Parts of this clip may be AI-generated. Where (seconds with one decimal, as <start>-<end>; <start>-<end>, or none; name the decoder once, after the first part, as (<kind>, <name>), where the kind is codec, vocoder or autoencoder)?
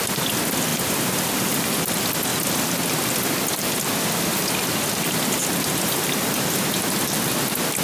0.7-1.8 (vocoder, BigVGAN v2)